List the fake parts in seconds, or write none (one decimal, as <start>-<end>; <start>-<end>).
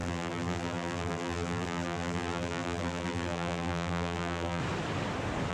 0.0-4.6